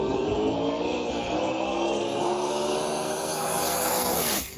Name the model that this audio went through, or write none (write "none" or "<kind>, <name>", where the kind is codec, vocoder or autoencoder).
codec, SNAC